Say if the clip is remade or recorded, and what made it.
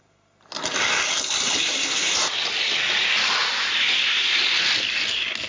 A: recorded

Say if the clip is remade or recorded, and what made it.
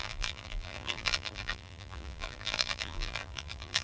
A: remade, vocoder, BigVGAN v2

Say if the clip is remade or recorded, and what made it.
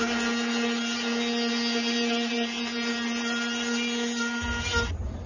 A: recorded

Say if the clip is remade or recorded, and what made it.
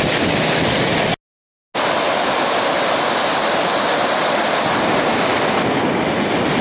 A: recorded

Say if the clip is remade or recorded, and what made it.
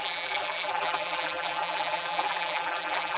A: remade, vocoder, BigVGAN v2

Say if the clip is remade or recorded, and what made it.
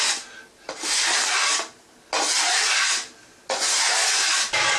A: recorded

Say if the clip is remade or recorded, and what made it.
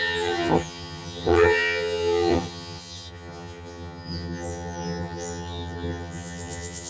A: remade, vocoder, HiFi-GAN